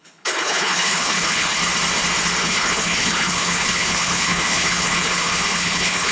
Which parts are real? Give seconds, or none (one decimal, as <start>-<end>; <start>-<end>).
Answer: 1.6-2.4